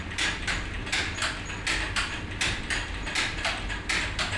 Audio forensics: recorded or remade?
recorded